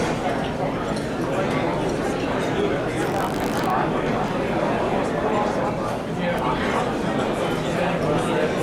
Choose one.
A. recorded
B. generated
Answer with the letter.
A